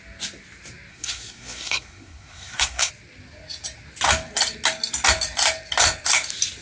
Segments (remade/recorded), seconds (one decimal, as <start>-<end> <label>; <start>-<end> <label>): 0.0-0.9 recorded; 0.9-2.9 remade; 2.9-6.6 recorded